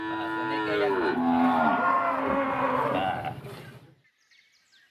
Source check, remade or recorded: recorded